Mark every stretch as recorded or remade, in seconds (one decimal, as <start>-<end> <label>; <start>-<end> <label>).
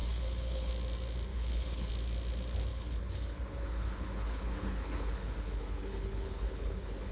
0.0-0.7 remade; 0.7-1.3 recorded; 1.3-1.9 remade; 1.9-2.7 recorded; 2.7-7.1 remade